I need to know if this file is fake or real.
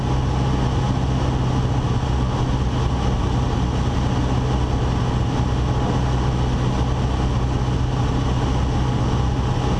real